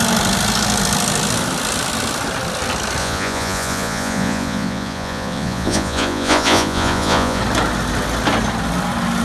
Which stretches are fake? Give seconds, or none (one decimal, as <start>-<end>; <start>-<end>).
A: 3.0-7.4

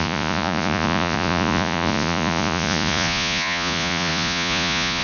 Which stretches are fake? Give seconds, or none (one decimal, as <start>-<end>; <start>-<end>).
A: 0.0-5.0

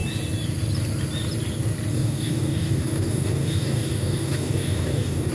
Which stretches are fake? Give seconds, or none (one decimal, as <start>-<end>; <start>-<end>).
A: 1.9-5.3